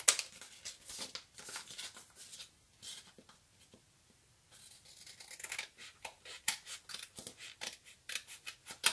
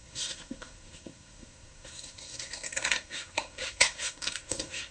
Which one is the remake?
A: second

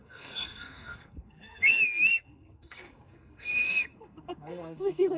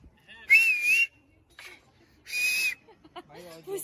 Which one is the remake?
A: first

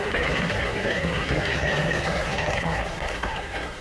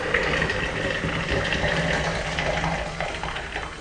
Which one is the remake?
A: first